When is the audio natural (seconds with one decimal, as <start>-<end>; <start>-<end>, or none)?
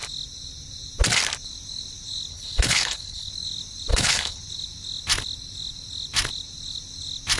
0.0-2.3; 3.3-3.9; 4.4-7.4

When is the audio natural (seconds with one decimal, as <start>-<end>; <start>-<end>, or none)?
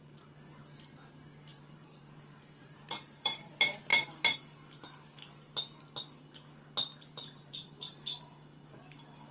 0.0-1.5; 3.5-3.9; 4.4-6.9; 8.2-9.3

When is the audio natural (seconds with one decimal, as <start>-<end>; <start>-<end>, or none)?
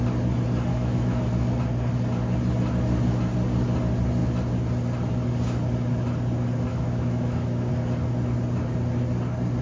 0.0-0.7; 1.3-6.7; 7.7-9.6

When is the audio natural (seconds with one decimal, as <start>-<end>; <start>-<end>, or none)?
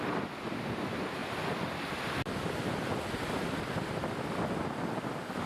0.0-5.5